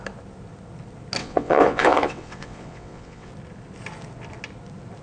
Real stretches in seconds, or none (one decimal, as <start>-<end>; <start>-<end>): 0.0-1.2; 3.3-5.0